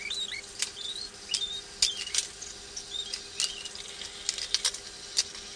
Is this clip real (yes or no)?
yes